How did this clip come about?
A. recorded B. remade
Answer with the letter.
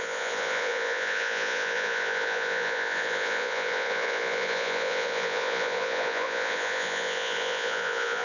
B